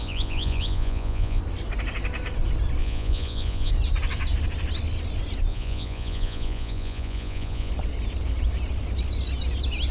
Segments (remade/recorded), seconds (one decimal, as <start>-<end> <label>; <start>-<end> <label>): 0.0-1.4 remade; 1.4-2.8 recorded; 2.8-3.7 remade; 3.7-5.5 recorded; 5.5-7.7 remade; 7.7-9.9 recorded